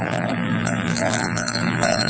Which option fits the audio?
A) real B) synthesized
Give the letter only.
B